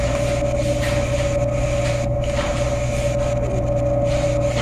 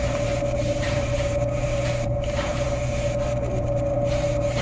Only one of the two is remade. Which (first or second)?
second